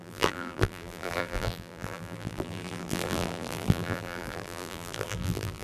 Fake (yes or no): yes